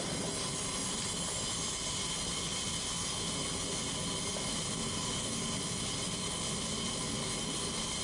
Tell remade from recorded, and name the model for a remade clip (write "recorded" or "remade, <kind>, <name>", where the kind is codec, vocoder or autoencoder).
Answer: recorded